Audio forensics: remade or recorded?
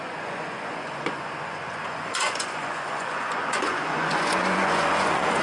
remade